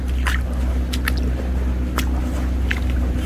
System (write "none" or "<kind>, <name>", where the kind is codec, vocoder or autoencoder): none